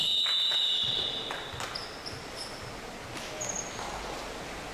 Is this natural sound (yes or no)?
yes